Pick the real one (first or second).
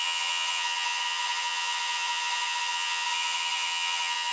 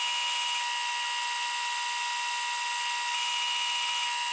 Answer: second